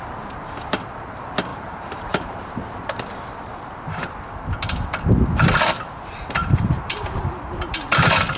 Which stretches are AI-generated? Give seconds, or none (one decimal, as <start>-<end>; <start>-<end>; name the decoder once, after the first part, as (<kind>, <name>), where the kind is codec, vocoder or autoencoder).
1.5-2.4 (vocoder, BigVGAN v2); 6.4-7.6